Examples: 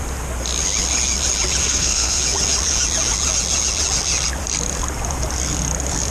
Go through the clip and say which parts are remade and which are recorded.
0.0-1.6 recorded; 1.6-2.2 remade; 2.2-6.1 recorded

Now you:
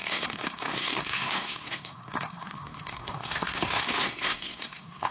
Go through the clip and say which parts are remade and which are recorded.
0.0-5.1 remade

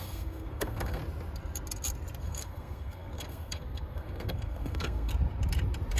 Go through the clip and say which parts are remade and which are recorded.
0.0-1.0 remade; 1.0-2.2 recorded; 2.2-5.1 remade; 5.1-6.0 recorded

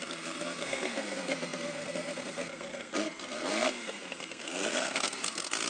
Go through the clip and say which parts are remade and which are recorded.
0.0-5.7 remade

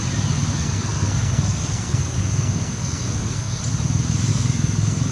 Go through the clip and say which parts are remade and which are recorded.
0.0-0.5 recorded; 0.5-3.6 remade; 3.6-4.3 recorded; 4.3-5.1 remade